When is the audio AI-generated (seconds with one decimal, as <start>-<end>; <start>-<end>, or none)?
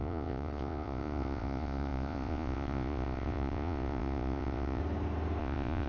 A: 0.0-4.8; 5.4-5.9